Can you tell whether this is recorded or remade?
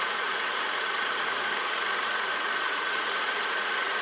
remade